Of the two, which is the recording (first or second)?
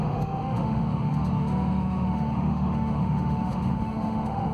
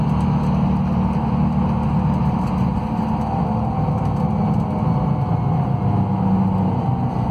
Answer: second